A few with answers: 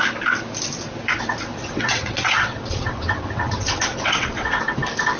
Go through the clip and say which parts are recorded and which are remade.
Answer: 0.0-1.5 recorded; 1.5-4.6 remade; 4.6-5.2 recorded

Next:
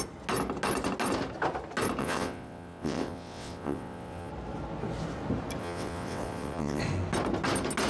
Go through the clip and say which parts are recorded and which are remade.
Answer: 0.0-2.0 recorded; 2.0-4.3 remade; 4.3-5.6 recorded; 5.6-6.8 remade; 6.8-7.9 recorded